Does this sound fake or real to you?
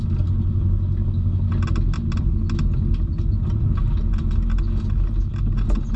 real